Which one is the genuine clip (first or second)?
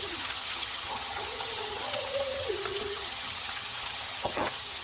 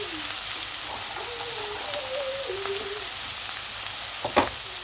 second